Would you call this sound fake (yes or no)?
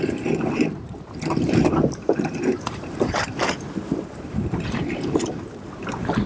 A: yes